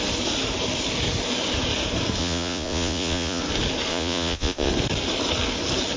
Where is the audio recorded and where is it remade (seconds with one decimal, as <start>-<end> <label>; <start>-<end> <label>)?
0.0-2.2 recorded; 2.2-3.4 remade; 3.4-3.9 recorded; 3.9-4.7 remade; 4.7-6.0 recorded